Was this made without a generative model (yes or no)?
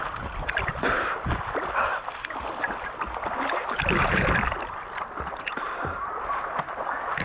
yes